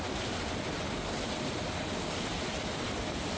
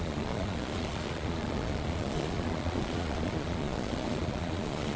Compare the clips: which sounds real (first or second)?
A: first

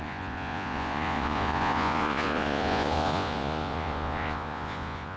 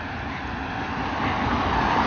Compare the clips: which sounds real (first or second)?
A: second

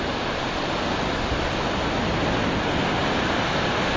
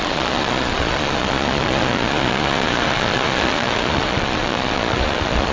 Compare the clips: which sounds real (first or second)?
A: first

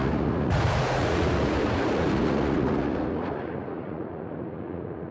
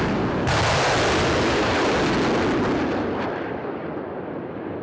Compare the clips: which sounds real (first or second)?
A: second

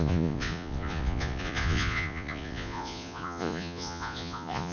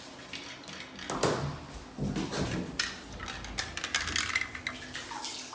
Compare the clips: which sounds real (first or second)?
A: second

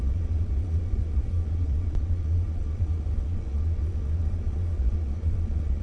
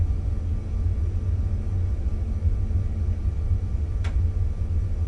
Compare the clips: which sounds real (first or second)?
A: second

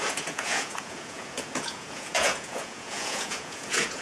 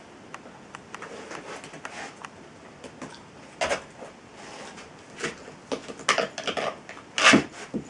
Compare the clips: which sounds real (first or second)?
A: second